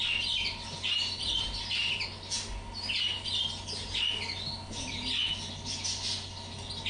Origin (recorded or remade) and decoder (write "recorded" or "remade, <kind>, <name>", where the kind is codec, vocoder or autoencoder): recorded